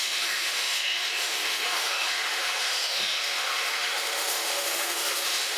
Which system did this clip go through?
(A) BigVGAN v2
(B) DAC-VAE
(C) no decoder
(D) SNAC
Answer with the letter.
B